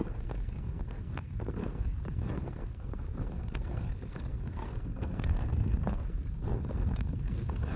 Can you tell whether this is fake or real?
fake